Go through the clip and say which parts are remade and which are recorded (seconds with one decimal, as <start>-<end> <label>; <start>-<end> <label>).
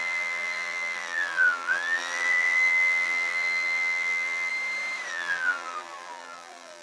0.0-4.5 remade; 4.5-5.1 recorded; 5.1-6.8 remade